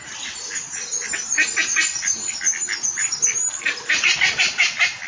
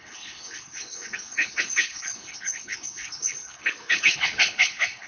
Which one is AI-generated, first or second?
second